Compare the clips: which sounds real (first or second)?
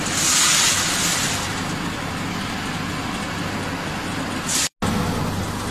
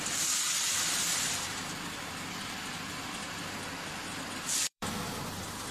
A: first